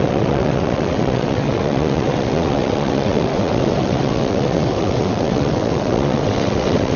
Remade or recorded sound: remade